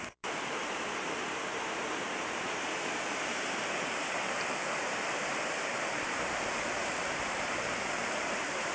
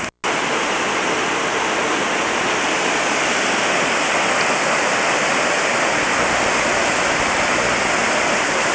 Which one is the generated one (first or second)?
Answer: first